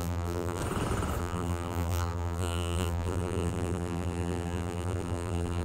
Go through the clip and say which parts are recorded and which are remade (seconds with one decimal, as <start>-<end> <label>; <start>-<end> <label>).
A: 0.0-0.6 remade; 0.6-1.2 recorded; 1.2-5.6 remade